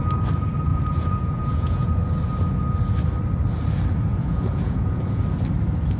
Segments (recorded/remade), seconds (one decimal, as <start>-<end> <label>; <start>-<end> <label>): 0.0-0.7 recorded; 0.7-2.0 remade; 2.0-4.1 recorded; 4.1-5.2 remade; 5.2-6.0 recorded